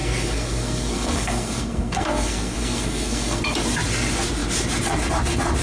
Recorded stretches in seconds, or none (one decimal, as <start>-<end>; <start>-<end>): 3.4-5.6